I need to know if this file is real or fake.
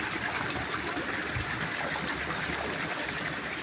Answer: real